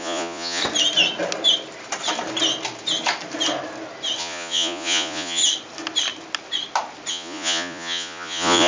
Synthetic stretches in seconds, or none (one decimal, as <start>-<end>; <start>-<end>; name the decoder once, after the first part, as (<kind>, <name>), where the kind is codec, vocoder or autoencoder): 0.0-0.6 (vocoder, Vocos); 4.2-5.4; 7.1-8.7